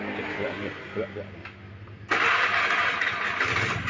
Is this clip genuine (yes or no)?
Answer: yes